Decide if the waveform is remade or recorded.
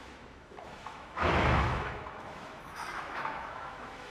remade